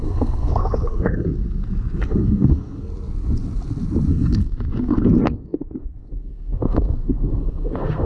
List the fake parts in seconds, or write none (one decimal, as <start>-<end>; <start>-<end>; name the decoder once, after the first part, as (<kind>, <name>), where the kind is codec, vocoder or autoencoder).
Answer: 0.0-2.9 (codec, SNAC); 4.1-8.1